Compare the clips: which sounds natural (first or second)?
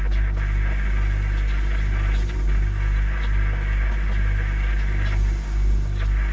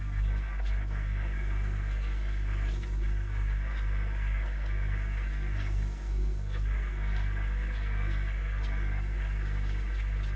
first